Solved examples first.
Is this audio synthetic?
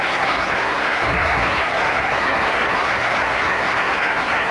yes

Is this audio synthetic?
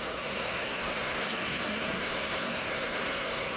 yes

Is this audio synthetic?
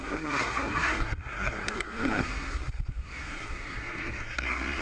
yes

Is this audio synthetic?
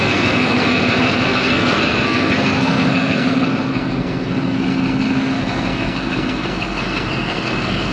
yes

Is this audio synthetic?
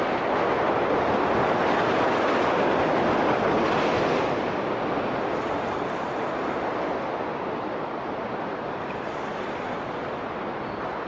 no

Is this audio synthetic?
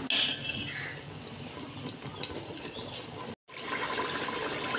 no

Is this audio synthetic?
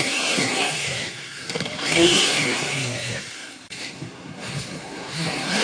yes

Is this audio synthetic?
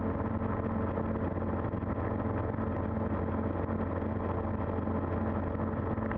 no